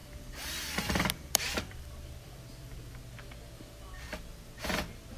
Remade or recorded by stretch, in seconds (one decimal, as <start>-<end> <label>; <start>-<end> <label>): 0.0-3.0 remade; 3.0-5.2 recorded